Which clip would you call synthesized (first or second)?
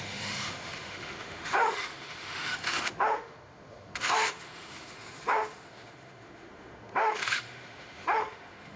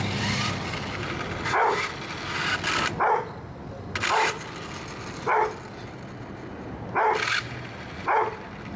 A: first